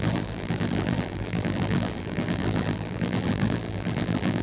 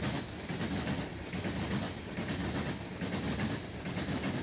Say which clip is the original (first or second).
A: second